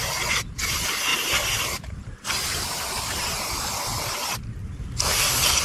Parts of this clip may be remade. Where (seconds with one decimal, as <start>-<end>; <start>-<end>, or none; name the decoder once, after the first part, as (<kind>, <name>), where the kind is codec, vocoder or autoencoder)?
1.1-3.7 (vocoder, BigVGAN v2); 4.6-5.6